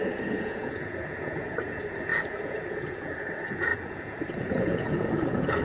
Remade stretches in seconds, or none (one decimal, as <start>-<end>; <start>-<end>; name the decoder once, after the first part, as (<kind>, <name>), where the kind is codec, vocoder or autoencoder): 0.0-5.6 (vocoder, Vocos)